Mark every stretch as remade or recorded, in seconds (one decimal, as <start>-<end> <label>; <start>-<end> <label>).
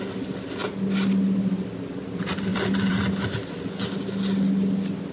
0.0-2.5 recorded; 2.5-3.0 remade; 3.0-5.1 recorded